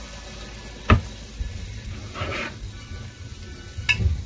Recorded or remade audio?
recorded